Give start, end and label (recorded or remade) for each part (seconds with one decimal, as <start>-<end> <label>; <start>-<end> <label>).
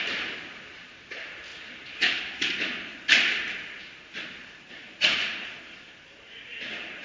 0.0-4.4 recorded; 4.4-5.6 remade; 5.6-7.0 recorded